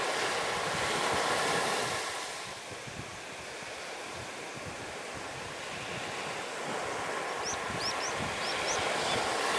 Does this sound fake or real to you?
real